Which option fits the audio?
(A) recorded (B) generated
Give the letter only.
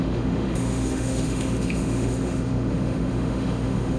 B